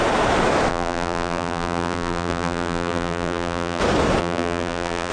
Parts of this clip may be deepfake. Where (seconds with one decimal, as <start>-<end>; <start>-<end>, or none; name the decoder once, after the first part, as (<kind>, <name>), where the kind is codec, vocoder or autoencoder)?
0.7-3.8 (vocoder, BigVGAN v2); 4.2-5.1